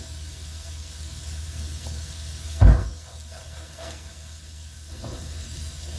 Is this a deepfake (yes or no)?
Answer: yes